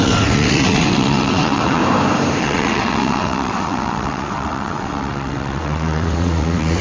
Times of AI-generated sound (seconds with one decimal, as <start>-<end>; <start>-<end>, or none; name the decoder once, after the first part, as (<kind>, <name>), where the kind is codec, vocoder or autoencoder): 0.0-1.8 (vocoder, WaveNeXt); 2.4-6.8